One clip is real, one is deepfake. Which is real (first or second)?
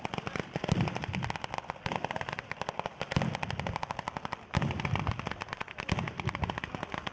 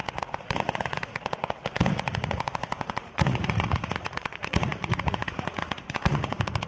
first